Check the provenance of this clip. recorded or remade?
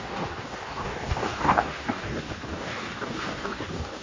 remade